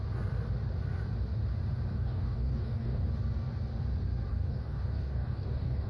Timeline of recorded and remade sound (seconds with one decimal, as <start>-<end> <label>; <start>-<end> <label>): 0.0-1.9 recorded; 1.9-3.1 remade; 3.1-4.3 recorded; 4.3-5.9 remade